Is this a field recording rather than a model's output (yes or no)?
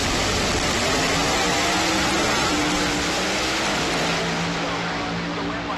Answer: yes